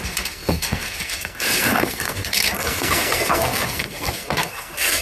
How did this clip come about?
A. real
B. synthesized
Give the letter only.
B